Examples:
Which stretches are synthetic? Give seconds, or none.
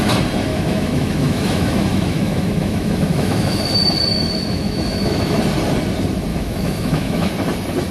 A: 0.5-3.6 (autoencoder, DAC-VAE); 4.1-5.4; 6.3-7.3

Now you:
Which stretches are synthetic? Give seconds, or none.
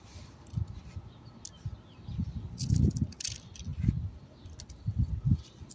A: none